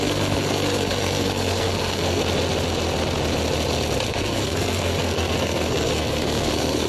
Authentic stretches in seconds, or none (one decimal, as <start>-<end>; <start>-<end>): 2.2-4.1